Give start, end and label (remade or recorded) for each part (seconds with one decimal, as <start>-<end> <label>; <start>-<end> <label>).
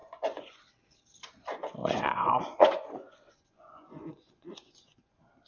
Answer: 0.0-0.6 remade; 0.6-1.8 recorded; 1.8-5.1 remade; 5.1-5.5 recorded